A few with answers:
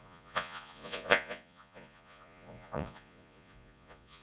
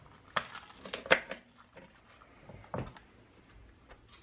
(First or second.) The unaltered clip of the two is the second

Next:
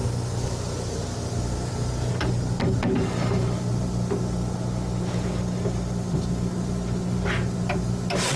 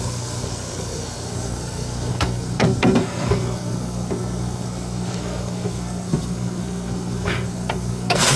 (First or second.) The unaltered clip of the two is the first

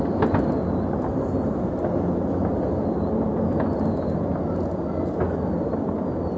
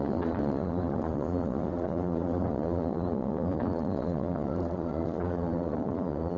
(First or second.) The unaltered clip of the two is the first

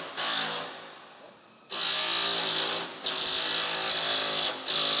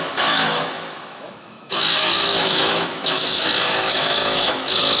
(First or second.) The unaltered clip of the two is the first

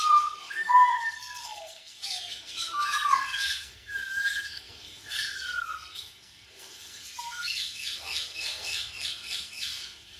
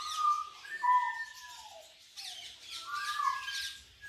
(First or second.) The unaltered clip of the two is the second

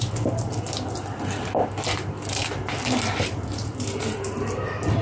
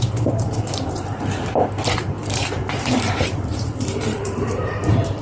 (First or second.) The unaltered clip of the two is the first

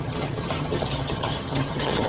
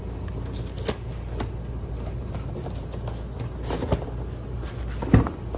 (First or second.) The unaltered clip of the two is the second